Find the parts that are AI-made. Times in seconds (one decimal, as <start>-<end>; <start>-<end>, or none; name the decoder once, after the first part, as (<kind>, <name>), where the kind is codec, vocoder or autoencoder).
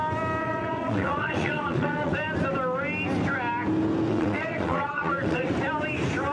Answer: 0.4-2.1 (vocoder, WaveNeXt); 4.1-5.5